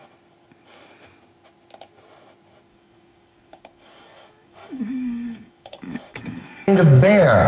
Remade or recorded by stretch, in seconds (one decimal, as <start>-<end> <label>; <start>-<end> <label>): 0.0-2.7 recorded; 2.7-7.5 remade